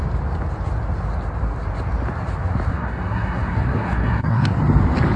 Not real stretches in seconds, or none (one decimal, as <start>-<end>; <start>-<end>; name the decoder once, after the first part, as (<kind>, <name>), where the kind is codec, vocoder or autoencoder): 2.7-4.6 (codec, SNAC)